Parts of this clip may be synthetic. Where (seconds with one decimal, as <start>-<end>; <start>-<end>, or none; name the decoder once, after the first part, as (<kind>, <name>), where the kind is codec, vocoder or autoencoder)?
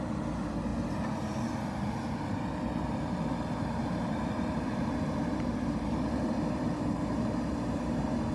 3.8-8.3 (vocoder, BigVGAN v2)